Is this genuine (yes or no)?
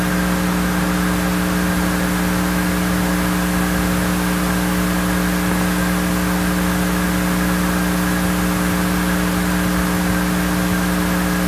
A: yes